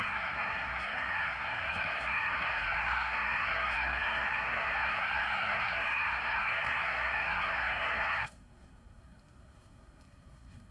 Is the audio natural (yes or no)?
no